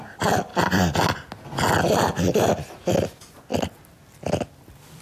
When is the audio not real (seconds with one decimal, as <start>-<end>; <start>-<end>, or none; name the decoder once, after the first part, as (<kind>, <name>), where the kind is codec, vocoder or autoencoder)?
none